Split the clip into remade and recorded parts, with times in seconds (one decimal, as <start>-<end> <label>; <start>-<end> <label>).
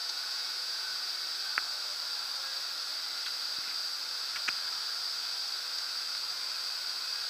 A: 0.0-1.1 remade; 1.1-7.3 recorded